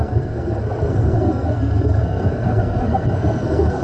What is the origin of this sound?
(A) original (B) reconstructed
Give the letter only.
B